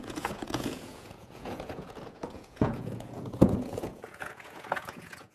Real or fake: fake